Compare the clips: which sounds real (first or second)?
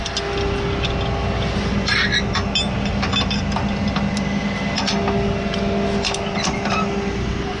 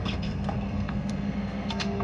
first